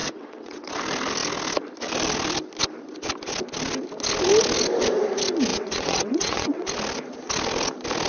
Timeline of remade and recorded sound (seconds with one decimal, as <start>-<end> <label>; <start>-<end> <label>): 0.0-0.7 remade; 0.7-5.5 recorded; 5.5-6.7 remade; 6.7-8.1 recorded